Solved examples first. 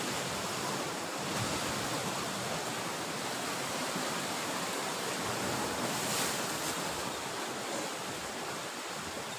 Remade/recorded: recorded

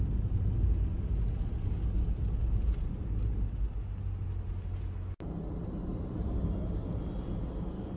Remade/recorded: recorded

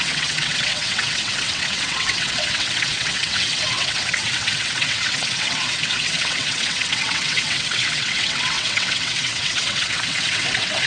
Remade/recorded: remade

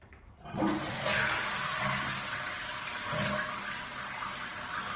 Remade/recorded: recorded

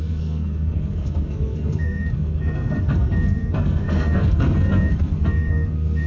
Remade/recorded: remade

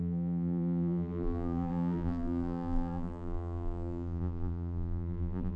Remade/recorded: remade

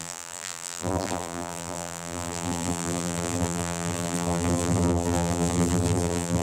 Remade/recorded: remade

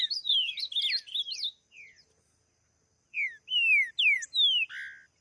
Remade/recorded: recorded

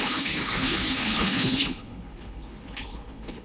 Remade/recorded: remade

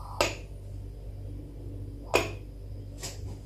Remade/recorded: recorded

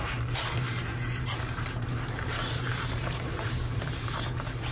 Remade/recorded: remade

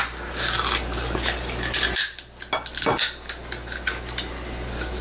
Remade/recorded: recorded